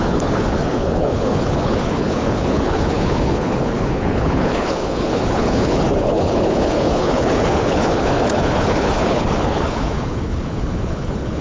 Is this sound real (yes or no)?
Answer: no